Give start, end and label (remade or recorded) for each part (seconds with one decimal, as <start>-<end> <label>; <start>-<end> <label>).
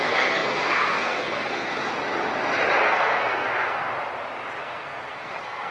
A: 0.0-1.7 remade; 1.7-2.8 recorded; 2.8-3.9 remade; 3.9-4.6 recorded; 4.6-5.7 remade